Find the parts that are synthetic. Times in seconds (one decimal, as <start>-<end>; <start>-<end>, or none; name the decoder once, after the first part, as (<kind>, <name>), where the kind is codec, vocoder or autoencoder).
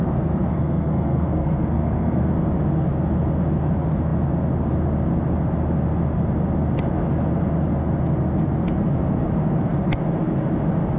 0.5-2.3 (codec, SNAC)